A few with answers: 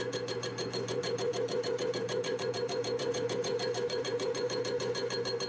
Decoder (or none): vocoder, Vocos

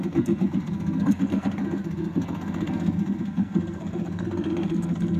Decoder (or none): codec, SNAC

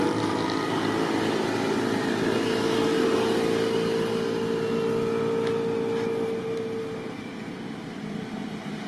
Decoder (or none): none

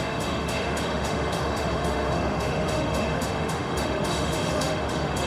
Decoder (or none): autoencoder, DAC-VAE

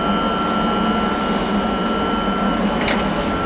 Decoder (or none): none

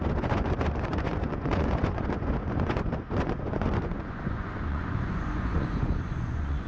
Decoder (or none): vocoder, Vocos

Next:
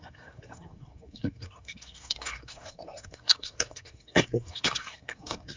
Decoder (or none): codec, SNAC